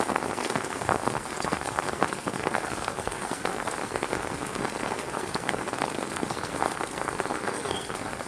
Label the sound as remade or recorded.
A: remade